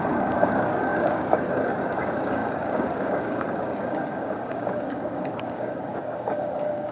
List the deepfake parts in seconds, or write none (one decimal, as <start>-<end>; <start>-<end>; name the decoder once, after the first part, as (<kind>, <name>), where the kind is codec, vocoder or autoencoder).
0.0-6.9 (codec, DAC)